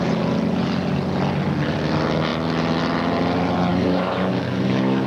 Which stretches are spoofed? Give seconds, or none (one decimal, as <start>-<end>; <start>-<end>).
3.7-5.1